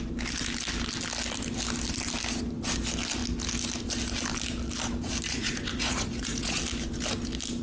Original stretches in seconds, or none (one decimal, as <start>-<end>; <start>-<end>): 0.0-5.3; 6.6-7.6